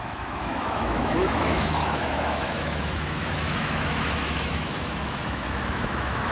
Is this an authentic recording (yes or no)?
no